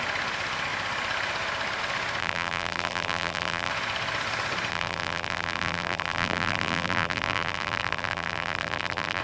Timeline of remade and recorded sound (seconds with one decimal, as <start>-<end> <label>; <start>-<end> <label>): 0.0-2.2 recorded; 2.2-3.7 remade; 3.7-4.7 recorded; 4.7-9.2 remade